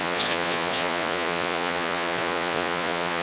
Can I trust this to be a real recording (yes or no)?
no